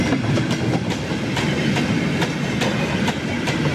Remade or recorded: recorded